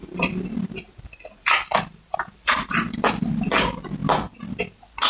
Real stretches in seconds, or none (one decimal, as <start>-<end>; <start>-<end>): 3.1-5.1